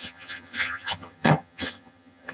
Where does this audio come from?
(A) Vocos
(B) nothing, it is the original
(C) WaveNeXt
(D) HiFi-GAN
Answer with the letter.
D